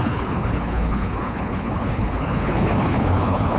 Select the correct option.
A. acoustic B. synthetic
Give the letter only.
B